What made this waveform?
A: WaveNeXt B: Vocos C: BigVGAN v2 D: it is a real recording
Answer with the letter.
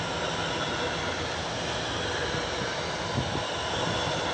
D